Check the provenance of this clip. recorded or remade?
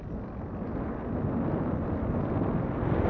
recorded